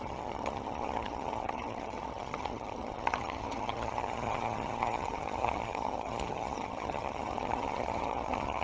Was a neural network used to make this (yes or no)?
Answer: yes